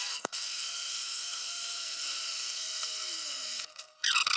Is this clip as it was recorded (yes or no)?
no